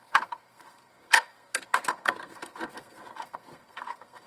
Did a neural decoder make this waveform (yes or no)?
yes